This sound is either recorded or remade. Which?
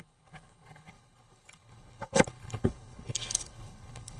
remade